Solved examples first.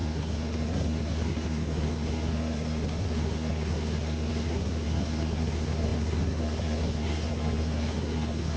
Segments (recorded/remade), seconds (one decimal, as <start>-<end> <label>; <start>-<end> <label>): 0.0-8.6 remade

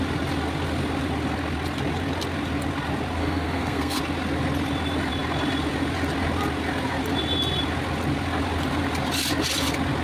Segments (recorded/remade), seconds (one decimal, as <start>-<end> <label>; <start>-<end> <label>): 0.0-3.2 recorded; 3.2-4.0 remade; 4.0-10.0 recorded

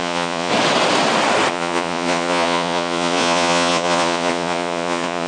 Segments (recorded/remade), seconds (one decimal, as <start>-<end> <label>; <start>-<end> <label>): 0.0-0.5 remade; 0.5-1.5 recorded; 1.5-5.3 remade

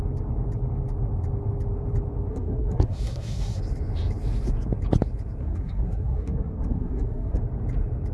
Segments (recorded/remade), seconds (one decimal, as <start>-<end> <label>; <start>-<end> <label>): 0.0-2.3 recorded; 2.3-3.6 remade; 3.6-5.4 recorded; 5.4-7.4 remade; 7.4-8.1 recorded